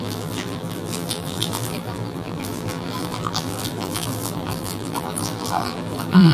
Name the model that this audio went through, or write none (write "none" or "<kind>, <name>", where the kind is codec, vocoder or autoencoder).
vocoder, BigVGAN v2